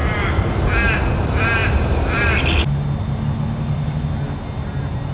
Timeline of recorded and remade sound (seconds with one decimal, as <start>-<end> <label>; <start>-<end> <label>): 0.0-5.1 recorded